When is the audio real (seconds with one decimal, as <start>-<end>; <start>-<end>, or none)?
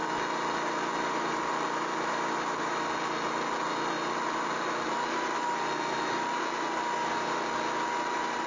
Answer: 0.0-8.5